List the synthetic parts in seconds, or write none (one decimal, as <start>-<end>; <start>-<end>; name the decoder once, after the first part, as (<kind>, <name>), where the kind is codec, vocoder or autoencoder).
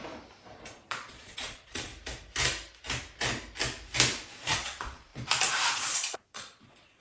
0.7-1.9 (vocoder, Vocos); 4.3-5.1; 5.7-7.0